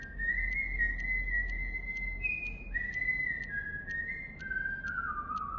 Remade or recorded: recorded